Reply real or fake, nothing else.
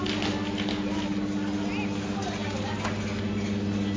real